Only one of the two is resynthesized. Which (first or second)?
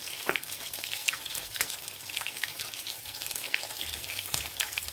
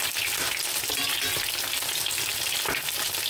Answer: first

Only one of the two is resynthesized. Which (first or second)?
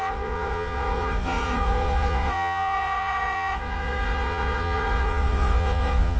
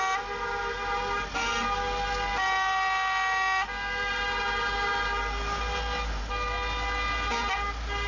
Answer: first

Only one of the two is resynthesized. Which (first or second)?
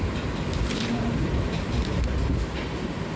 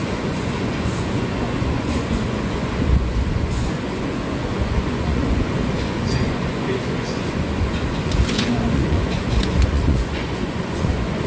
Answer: second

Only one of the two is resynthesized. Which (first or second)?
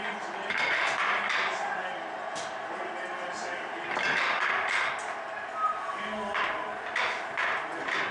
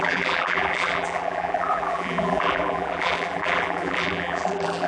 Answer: second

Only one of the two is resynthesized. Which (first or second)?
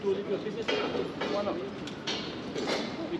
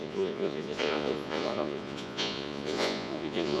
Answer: second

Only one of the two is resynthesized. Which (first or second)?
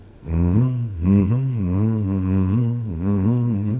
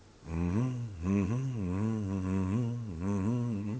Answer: first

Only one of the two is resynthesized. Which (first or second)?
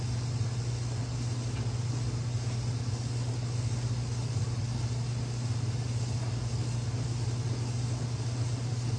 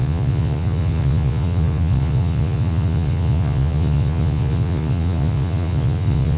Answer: second